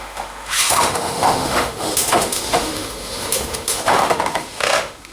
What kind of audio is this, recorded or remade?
remade